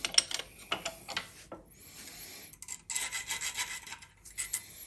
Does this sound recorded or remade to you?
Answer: recorded